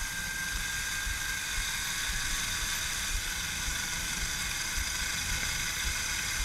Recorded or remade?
recorded